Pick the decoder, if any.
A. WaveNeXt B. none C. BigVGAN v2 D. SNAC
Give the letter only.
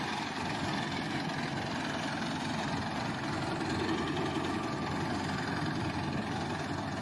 B